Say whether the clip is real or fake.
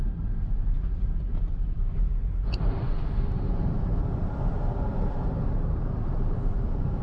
fake